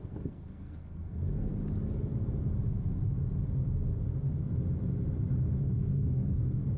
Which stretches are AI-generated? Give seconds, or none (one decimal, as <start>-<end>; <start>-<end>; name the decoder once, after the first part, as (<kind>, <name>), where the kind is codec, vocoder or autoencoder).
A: 0.0-1.5 (codec, SNAC); 5.6-6.8